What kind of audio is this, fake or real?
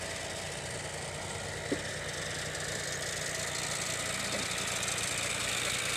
real